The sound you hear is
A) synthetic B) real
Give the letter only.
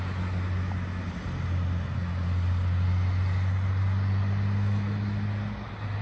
B